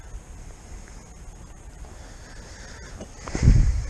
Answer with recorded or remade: recorded